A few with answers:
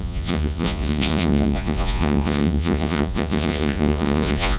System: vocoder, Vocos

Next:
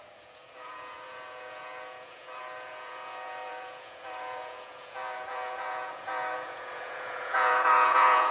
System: vocoder, Vocos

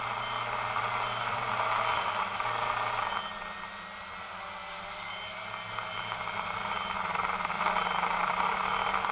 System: none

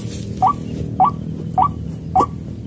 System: none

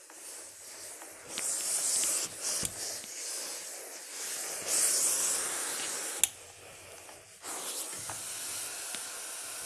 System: none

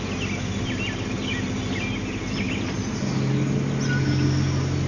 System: none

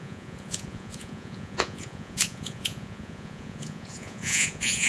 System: vocoder, Vocos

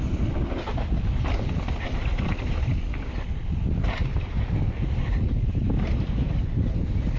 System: none